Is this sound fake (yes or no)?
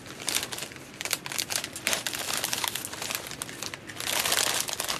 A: no